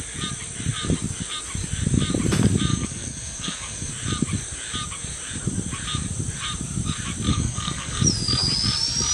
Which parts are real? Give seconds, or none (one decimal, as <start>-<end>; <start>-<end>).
0.0-2.7; 3.9-7.3; 8.0-9.1